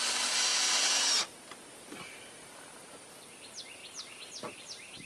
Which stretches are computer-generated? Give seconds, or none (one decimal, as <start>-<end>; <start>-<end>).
none